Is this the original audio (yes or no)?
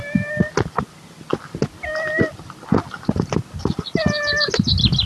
yes